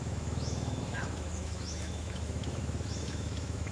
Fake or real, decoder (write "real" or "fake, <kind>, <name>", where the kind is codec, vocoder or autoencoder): fake, autoencoder, DAC-VAE